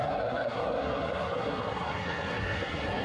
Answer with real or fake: fake